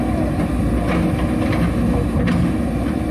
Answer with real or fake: real